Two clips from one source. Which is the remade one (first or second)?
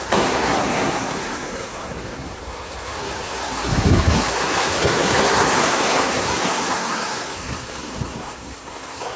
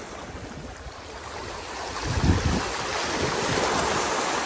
first